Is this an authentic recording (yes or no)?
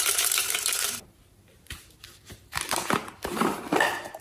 no